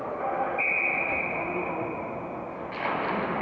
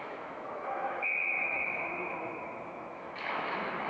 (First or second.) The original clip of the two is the first